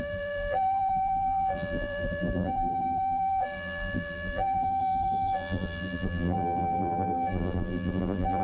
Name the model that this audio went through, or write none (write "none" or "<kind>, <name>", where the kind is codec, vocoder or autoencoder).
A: vocoder, BigVGAN v2